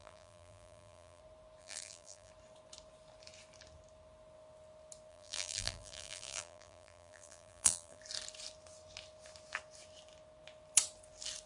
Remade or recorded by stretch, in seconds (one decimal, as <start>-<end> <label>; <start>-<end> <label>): 0.0-1.2 remade; 1.2-1.6 recorded; 1.6-2.3 remade; 2.3-5.1 recorded; 5.1-8.0 remade; 8.0-11.5 recorded